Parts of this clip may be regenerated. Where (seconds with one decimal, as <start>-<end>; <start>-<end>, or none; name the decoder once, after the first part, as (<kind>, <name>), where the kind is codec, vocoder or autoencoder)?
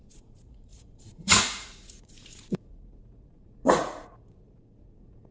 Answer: 0.0-5.3 (vocoder, Vocos)